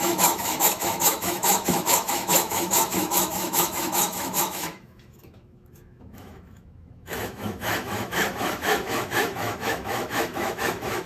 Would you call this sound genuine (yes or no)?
no